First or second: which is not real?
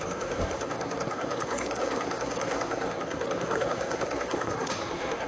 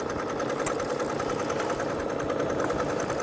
first